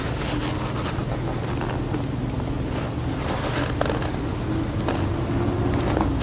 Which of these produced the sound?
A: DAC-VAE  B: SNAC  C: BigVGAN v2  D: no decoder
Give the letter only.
D